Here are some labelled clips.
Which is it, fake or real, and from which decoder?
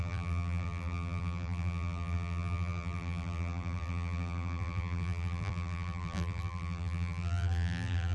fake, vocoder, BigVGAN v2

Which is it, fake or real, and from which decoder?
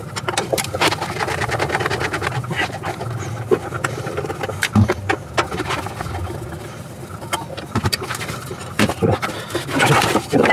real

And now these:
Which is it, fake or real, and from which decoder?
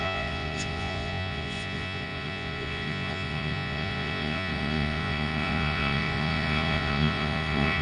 fake, vocoder, Vocos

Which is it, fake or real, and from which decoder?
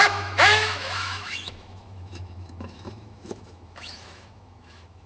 fake, autoencoder, DAC-VAE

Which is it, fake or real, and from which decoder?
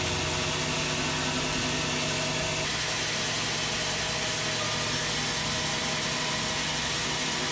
real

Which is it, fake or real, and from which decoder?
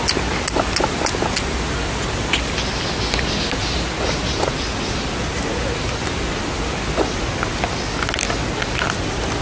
real